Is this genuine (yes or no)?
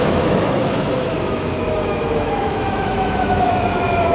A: no